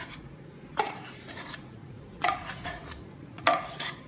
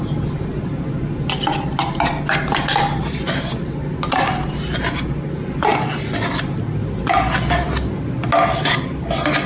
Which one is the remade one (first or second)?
first